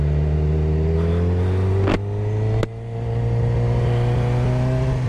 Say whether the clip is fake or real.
real